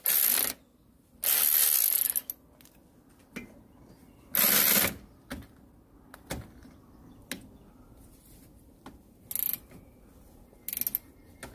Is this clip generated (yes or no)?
no